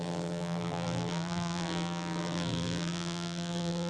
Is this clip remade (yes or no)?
yes